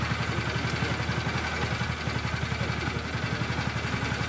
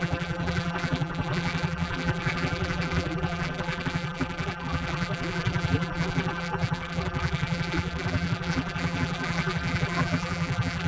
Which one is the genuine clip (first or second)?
first